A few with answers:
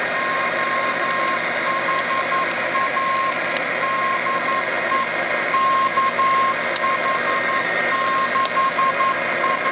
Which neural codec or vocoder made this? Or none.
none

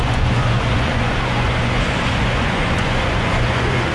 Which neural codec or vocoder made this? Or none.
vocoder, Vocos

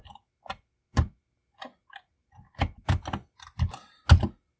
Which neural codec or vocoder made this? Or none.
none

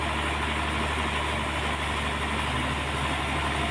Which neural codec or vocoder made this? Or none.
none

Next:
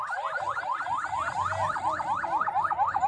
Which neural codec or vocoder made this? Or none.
none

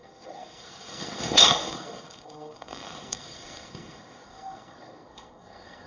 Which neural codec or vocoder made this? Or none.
codec, SNAC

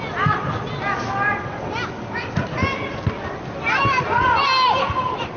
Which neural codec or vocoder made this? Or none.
none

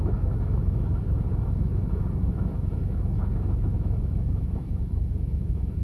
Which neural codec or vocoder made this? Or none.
autoencoder, DAC-VAE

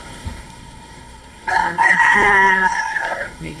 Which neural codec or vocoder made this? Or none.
codec, SNAC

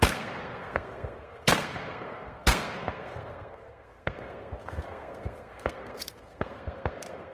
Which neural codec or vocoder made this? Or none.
codec, SNAC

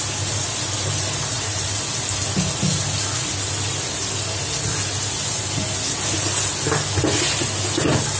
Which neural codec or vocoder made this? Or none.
none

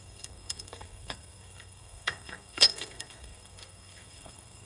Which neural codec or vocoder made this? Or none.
codec, SNAC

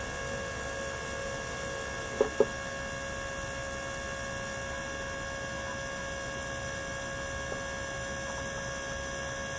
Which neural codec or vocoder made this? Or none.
none